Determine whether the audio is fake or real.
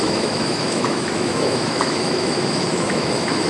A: fake